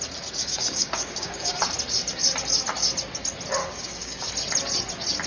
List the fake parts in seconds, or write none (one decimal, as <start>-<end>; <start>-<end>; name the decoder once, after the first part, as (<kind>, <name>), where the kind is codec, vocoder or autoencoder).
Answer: 0.4-1.6 (codec, DAC); 3.6-4.3